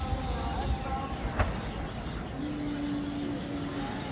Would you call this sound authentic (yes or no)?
yes